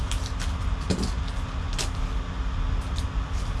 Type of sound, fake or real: real